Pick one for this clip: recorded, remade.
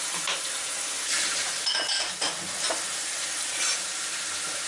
recorded